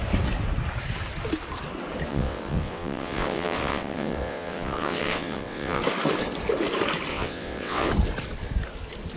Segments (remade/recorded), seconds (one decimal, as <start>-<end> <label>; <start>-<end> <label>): 0.0-2.1 recorded; 2.1-5.8 remade; 5.8-7.1 recorded; 7.1-7.9 remade; 7.9-9.2 recorded

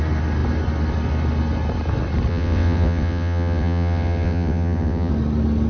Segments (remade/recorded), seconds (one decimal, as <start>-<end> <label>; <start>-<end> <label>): 0.0-2.3 recorded; 2.3-5.1 remade; 5.1-5.7 recorded

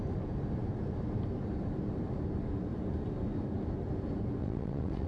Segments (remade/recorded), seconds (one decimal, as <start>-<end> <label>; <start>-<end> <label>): 0.0-4.4 recorded; 4.4-5.1 remade

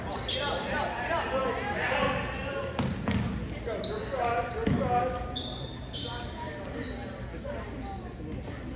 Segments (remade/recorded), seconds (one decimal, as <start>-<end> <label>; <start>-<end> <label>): 0.0-8.8 recorded

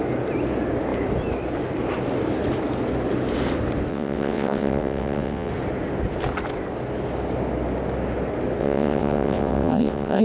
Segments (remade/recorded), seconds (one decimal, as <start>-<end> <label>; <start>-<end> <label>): 0.0-3.9 recorded; 3.9-5.5 remade; 5.5-8.6 recorded; 8.6-10.2 remade

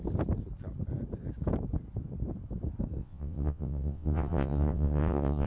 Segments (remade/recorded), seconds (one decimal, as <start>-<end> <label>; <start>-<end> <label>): 0.0-3.0 recorded; 3.0-5.5 remade

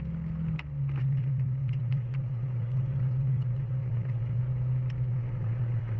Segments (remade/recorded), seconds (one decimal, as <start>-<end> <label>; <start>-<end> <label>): 0.0-1.0 recorded; 1.0-4.4 remade; 4.4-5.1 recorded; 5.1-6.0 remade

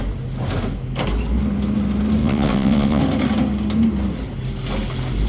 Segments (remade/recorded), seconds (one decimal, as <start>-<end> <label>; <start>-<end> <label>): 0.0-2.2 recorded; 2.2-3.0 remade; 3.0-5.3 recorded